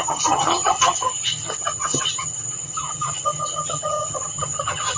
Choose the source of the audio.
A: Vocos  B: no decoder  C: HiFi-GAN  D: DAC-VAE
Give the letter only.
C